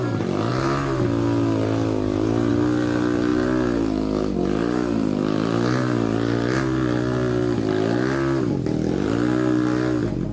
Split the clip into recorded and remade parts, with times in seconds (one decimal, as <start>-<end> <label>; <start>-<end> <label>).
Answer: 0.0-10.3 recorded